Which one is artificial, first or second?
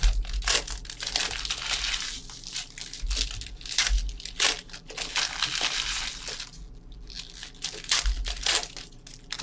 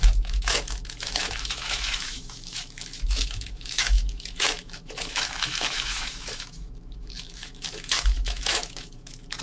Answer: second